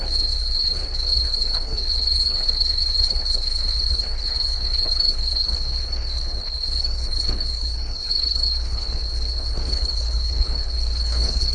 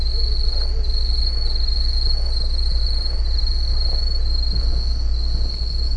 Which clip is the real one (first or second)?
second